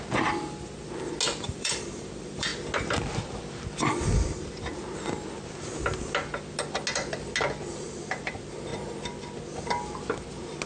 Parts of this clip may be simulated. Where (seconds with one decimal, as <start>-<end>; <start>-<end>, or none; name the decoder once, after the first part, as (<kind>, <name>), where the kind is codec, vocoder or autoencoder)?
1.4-2.5 (vocoder, BigVGAN v2); 7.7-8.7